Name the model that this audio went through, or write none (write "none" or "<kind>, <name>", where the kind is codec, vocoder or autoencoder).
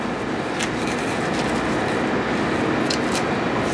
none